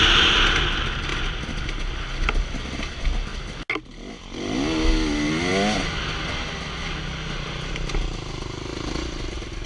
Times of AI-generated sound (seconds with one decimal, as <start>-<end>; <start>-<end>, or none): none